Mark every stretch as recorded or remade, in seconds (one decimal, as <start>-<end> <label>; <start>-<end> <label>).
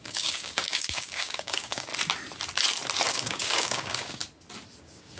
0.0-1.9 remade; 1.9-3.1 recorded; 3.1-4.2 remade; 4.2-4.8 recorded; 4.8-5.2 remade